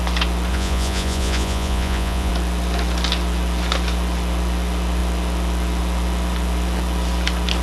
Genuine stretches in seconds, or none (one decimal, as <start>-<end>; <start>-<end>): 0.0-0.5; 2.3-7.6